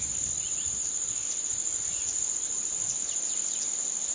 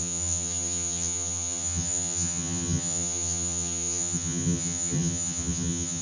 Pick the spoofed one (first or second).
second